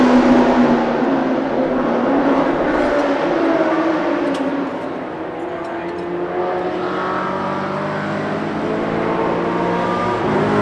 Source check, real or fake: real